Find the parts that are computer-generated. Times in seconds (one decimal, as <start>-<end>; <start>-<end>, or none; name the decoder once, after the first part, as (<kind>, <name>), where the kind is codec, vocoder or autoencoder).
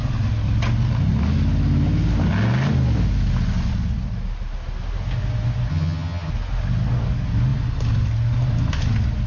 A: 5.7-6.3 (vocoder, HiFi-GAN)